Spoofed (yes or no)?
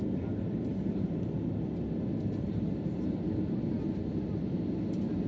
no